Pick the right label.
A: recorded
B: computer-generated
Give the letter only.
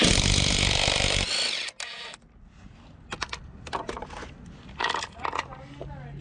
A